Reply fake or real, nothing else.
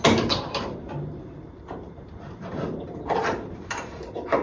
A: fake